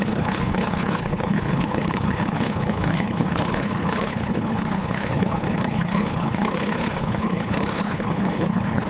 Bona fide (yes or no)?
no